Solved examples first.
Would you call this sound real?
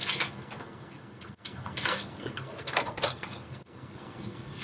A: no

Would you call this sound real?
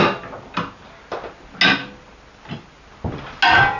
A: yes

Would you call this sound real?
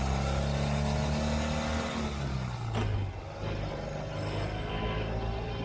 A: yes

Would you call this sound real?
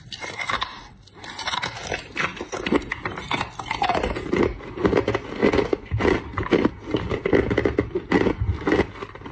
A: yes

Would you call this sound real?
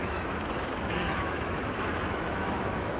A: no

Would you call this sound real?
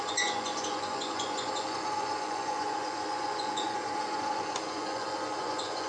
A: no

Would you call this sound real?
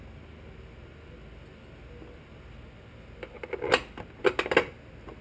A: yes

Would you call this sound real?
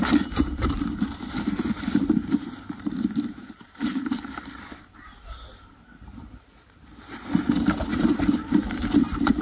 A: no